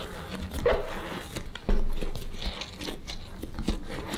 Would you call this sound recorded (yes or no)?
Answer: yes